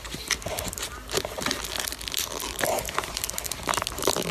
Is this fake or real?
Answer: real